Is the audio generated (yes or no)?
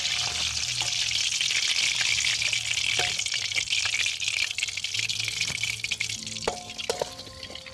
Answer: no